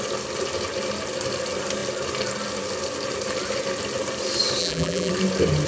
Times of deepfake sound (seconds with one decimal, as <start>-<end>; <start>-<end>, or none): 4.6-5.1